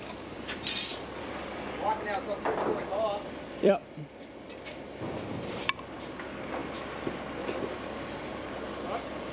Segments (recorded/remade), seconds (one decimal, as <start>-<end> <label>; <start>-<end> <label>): 0.0-0.9 recorded; 0.9-5.2 remade; 5.2-9.3 recorded